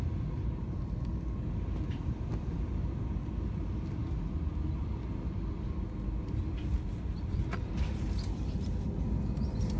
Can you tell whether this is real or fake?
real